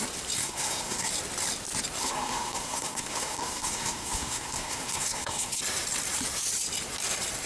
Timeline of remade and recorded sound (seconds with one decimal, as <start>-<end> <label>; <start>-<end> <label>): 0.0-0.4 recorded; 0.4-1.1 remade; 1.1-2.0 recorded; 2.0-5.6 remade; 5.6-7.5 recorded